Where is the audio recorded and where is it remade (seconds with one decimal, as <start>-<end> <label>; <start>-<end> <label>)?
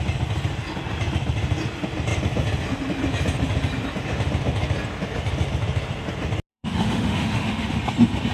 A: 0.0-6.5 recorded; 6.5-7.8 remade; 7.8-8.3 recorded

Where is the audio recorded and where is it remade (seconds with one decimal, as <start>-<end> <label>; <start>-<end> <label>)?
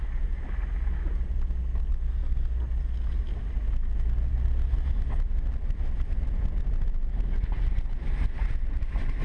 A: 0.0-9.2 recorded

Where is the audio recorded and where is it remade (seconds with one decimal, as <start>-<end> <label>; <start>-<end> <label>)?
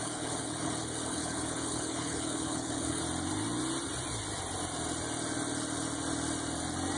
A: 0.0-3.0 remade; 3.0-7.0 recorded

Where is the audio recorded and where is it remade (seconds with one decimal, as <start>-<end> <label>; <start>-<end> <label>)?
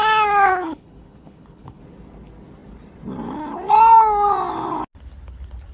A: 0.0-0.5 recorded; 0.5-1.8 remade; 1.8-5.7 recorded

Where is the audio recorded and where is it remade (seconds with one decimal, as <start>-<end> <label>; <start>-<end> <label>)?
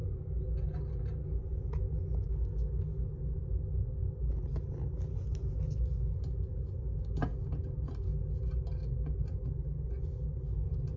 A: 0.0-11.0 recorded